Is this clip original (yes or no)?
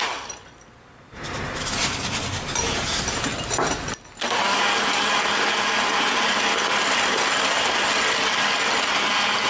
yes